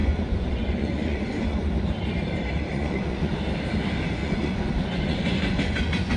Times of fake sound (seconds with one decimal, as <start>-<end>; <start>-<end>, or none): 0.0-1.7; 2.7-3.3; 4.2-6.2